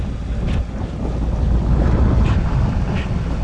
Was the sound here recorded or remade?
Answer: recorded